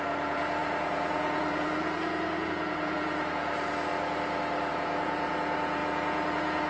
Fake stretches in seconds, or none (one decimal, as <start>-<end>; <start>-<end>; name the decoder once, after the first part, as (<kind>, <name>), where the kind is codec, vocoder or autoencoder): 0.0-3.9 (vocoder, Vocos); 4.7-6.7